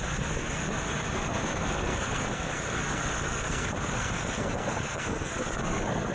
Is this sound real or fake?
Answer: fake